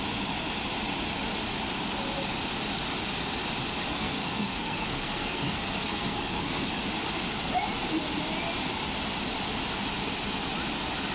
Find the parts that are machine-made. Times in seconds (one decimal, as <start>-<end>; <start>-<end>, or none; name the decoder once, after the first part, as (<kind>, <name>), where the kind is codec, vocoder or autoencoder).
3.9-6.7 (codec, SNAC)